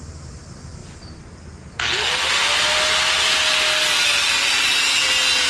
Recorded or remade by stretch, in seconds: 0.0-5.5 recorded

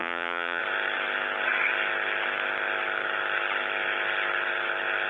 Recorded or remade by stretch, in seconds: 0.0-0.6 remade; 0.6-5.1 recorded

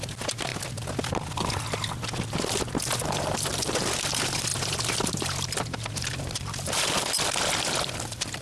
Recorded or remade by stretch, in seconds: 0.0-0.5 remade; 0.5-3.0 recorded; 3.0-8.4 remade

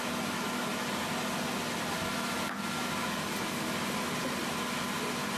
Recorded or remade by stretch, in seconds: 0.0-5.4 recorded